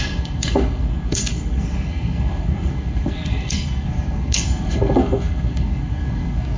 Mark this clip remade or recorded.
remade